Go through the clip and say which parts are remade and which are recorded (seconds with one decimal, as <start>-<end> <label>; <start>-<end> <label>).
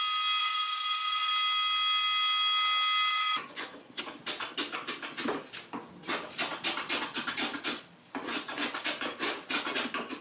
0.0-0.4 recorded; 0.4-1.3 remade; 1.3-3.1 recorded; 3.1-4.0 remade; 4.0-8.3 recorded; 8.3-8.9 remade; 8.9-10.2 recorded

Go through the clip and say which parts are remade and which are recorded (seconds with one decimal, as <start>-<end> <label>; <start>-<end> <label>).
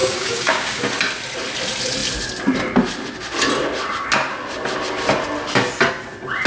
0.0-0.8 remade; 0.8-6.5 recorded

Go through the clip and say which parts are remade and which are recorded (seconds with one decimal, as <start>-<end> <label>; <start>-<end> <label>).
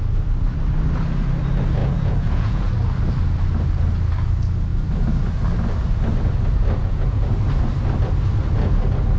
0.0-1.8 recorded; 1.8-2.7 remade; 2.7-6.8 recorded; 6.8-7.3 remade; 7.3-9.2 recorded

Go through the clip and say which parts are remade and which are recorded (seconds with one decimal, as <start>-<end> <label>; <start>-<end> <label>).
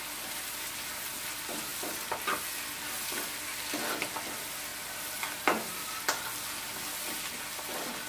0.0-8.1 recorded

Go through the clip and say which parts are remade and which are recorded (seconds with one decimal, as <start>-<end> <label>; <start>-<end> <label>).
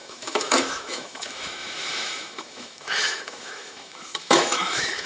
0.0-5.1 remade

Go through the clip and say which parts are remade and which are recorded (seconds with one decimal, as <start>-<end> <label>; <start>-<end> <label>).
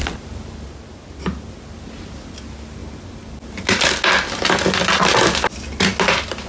0.0-6.5 recorded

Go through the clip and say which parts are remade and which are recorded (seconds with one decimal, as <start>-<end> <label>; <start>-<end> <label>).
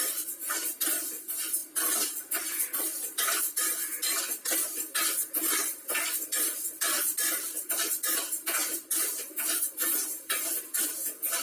0.0-11.4 recorded